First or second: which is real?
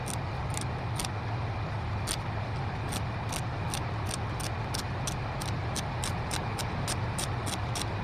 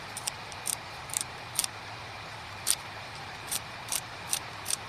first